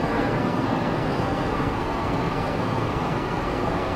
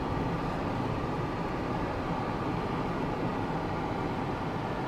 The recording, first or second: second